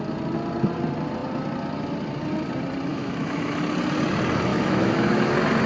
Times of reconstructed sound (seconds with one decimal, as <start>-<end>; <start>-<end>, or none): 2.9-3.6; 4.5-5.3